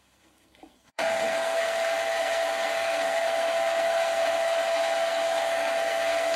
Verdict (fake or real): fake